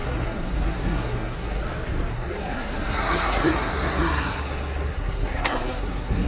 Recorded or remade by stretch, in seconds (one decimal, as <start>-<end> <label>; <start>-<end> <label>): 0.0-1.6 remade; 1.6-2.1 recorded; 2.1-6.3 remade